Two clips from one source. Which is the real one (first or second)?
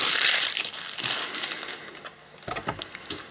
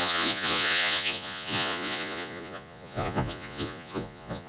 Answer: first